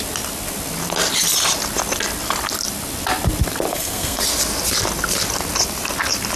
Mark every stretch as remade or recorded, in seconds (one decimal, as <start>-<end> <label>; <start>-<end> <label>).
0.0-3.7 recorded; 3.7-4.2 remade; 4.2-6.4 recorded